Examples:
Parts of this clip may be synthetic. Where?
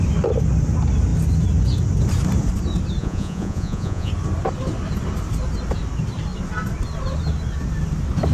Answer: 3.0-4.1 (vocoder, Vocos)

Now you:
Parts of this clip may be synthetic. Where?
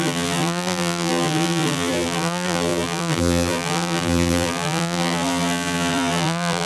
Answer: 0.0-6.7 (vocoder, BigVGAN v2)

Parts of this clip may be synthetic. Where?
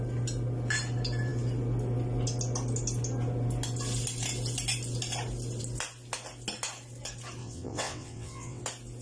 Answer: 7.4-8.6 (vocoder, WaveNeXt)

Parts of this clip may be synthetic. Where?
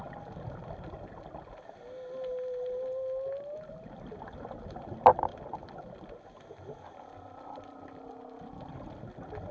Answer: none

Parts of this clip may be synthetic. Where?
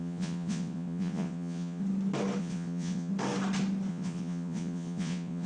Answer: 0.0-1.8 (vocoder, Vocos); 2.4-3.1; 3.9-5.5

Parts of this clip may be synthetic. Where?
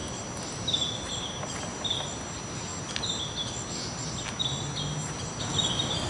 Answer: none